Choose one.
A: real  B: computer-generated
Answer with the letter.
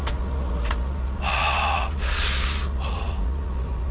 B